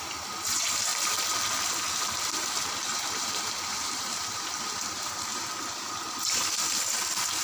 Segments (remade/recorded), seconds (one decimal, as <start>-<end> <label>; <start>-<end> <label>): 0.0-2.9 recorded; 2.9-6.2 remade; 6.2-7.4 recorded